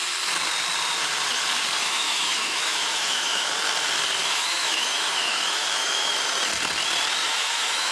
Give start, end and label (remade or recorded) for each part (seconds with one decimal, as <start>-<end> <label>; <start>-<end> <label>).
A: 0.0-1.8 recorded; 1.8-3.5 remade; 3.5-4.2 recorded; 4.2-6.1 remade; 6.1-7.2 recorded; 7.2-7.9 remade